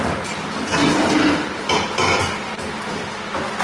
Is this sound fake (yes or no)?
no